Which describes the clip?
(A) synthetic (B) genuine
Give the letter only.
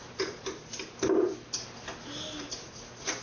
B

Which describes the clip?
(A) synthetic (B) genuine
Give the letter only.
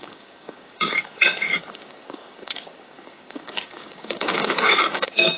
A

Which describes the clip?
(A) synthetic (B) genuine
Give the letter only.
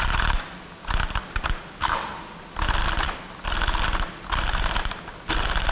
B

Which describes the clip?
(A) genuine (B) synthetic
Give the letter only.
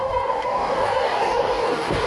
B